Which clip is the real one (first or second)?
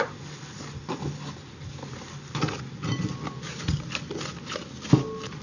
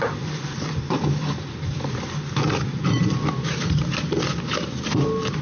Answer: first